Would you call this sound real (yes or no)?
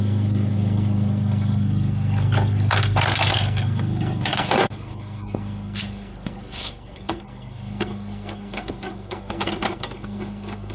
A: no